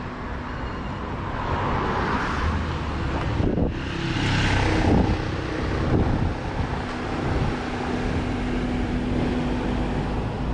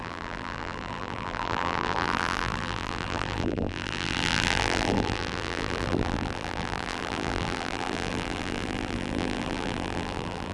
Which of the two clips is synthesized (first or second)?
second